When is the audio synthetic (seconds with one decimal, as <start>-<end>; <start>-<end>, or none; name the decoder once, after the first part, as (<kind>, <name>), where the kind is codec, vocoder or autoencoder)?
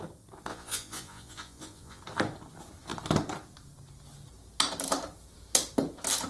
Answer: 0.5-2.0 (vocoder, Vocos)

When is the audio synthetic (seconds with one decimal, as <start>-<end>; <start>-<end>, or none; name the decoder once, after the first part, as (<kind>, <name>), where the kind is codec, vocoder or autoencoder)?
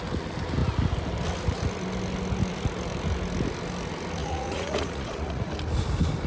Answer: 4.2-5.5 (vocoder, Vocos)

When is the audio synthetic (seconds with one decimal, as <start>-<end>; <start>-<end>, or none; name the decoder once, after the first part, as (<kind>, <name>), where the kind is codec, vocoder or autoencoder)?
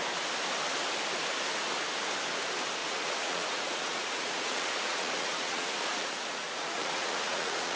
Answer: 2.8-7.8 (vocoder, Vocos)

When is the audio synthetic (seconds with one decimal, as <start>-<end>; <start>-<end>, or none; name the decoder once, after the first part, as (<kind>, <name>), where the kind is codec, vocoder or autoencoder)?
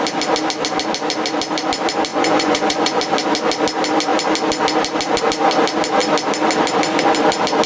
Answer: 2.1-3.0 (vocoder, Vocos)